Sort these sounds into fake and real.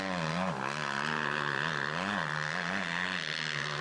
real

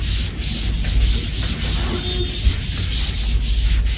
real